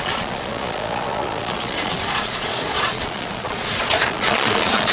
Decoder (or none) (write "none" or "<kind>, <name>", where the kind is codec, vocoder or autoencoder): vocoder, Vocos